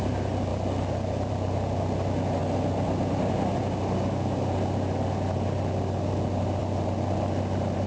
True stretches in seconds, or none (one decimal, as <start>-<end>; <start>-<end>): 0.0-7.9